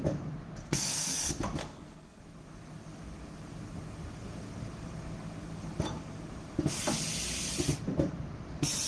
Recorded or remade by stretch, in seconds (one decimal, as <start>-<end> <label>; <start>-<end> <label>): 0.0-0.6 recorded; 0.6-1.2 remade; 1.2-1.6 recorded; 1.6-2.2 remade; 2.2-8.9 recorded